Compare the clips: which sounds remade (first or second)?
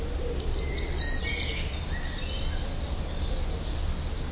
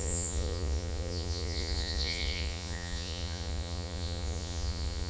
second